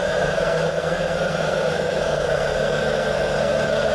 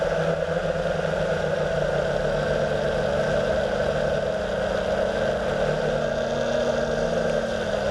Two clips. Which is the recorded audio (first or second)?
second